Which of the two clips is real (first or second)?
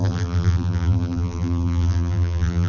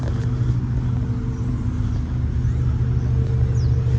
second